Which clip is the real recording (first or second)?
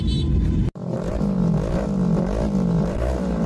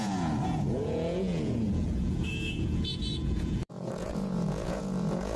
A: first